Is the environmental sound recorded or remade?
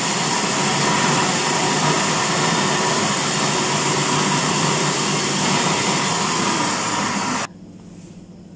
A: recorded